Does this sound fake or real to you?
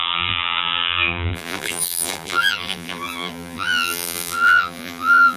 fake